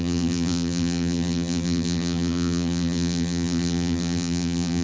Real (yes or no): no